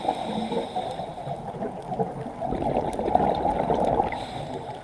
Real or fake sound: real